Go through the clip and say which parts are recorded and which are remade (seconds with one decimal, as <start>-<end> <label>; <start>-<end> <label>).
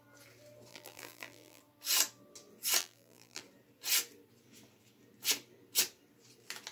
0.0-0.7 recorded; 0.7-1.6 remade; 1.6-2.8 recorded; 2.8-3.4 remade; 3.4-6.7 recorded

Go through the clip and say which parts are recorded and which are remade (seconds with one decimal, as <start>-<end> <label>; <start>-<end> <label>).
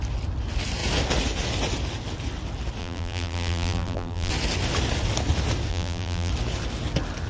0.0-2.8 recorded; 2.8-4.3 remade; 4.3-5.7 recorded; 5.7-6.3 remade; 6.3-7.3 recorded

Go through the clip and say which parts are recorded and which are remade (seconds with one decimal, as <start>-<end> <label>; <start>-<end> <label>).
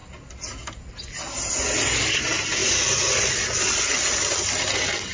0.0-5.1 recorded